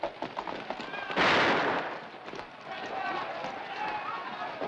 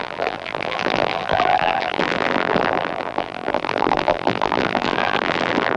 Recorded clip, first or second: first